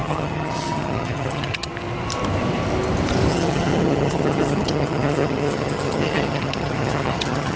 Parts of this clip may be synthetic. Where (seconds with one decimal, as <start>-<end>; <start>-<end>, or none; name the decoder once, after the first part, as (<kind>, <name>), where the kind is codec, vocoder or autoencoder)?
0.0-1.7 (vocoder, HiFi-GAN); 3.3-7.6